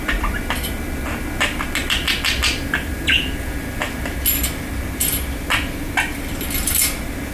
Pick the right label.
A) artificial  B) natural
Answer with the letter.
B